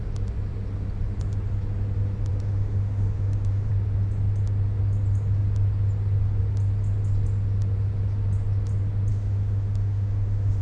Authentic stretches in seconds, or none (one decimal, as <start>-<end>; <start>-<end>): 0.0-2.3; 3.7-9.1